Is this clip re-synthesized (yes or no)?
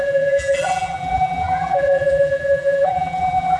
yes